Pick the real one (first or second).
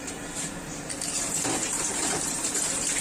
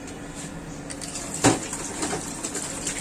second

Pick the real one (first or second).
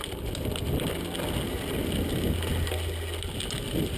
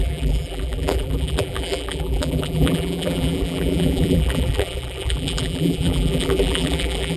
first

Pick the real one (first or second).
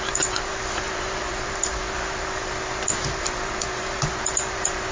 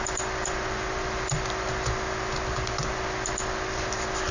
second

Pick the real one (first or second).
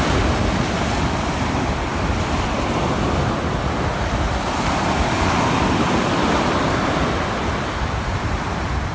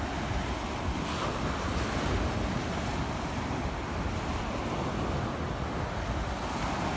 second